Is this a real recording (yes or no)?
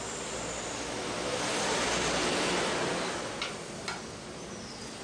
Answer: yes